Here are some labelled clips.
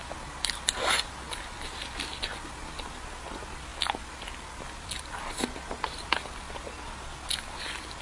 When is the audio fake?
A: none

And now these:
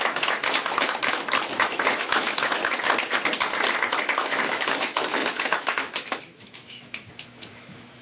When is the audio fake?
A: 0.0-2.6 (autoencoder, DAC-VAE); 4.0-8.0

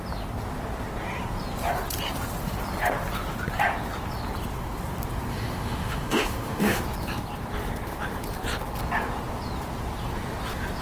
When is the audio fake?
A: 5.3-6.8 (autoencoder, DAC-VAE)

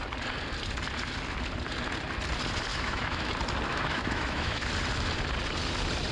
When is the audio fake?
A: 2.7-3.3 (autoencoder, DAC-VAE); 3.7-4.7

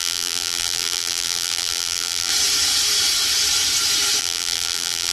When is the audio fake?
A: 0.0-2.3 (vocoder, BigVGAN v2); 4.2-5.1

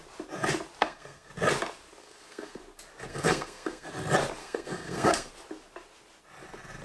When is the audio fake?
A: 0.8-1.3 (codec, SNAC); 2.0-2.6; 3.1-3.9; 4.4-5.3